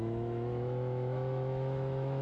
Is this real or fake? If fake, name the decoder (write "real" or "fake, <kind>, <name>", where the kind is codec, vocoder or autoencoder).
fake, autoencoder, DAC-VAE